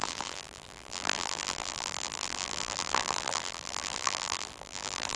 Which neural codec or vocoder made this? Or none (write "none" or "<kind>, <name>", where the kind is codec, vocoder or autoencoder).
vocoder, BigVGAN v2